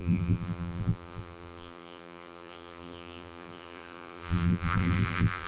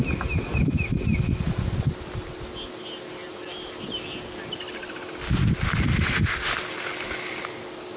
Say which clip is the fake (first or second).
first